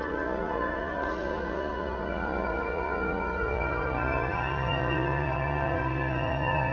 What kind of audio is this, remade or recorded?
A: remade